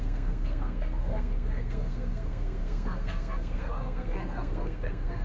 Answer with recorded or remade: remade